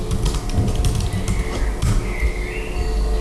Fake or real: real